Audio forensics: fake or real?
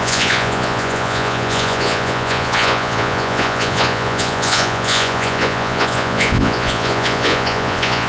fake